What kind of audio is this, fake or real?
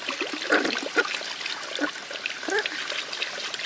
real